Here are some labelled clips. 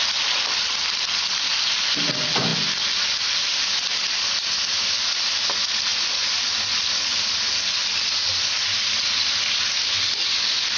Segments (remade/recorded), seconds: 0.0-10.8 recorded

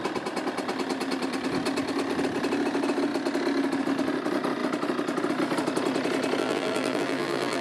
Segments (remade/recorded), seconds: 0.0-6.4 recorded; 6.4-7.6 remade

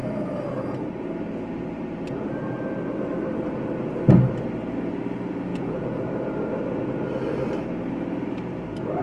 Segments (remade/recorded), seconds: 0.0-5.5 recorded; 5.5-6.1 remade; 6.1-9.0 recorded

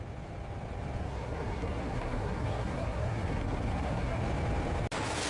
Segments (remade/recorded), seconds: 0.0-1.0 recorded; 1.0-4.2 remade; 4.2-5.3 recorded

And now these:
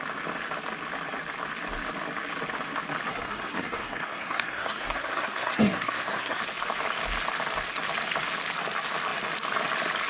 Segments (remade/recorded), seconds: 0.0-3.1 recorded; 3.1-6.4 remade; 6.4-10.1 recorded